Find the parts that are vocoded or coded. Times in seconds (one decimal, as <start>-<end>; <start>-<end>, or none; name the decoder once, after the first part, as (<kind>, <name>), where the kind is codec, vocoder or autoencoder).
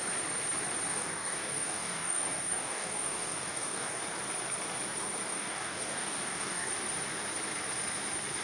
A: 0.9-4.0 (codec, DAC); 5.3-6.7